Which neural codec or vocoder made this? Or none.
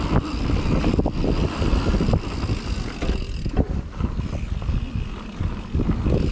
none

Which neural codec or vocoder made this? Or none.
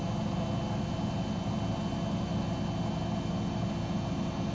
none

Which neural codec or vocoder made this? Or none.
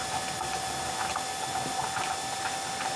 none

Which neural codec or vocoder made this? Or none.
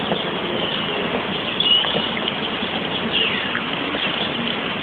none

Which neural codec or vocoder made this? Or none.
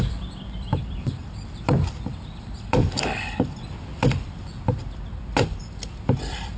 vocoder, BigVGAN v2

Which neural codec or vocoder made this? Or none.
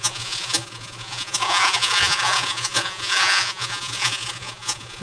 vocoder, Vocos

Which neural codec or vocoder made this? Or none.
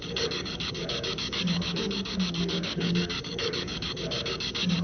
codec, DAC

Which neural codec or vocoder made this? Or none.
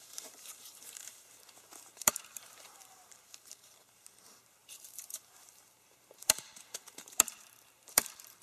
vocoder, BigVGAN v2